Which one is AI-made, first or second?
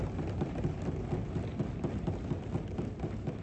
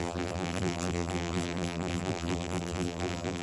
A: second